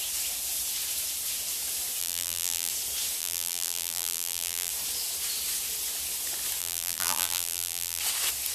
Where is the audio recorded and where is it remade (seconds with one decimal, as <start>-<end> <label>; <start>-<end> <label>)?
0.0-2.0 recorded; 2.0-2.7 remade; 2.7-3.2 recorded; 3.2-4.7 remade; 4.7-6.6 recorded; 6.6-8.0 remade; 8.0-8.5 recorded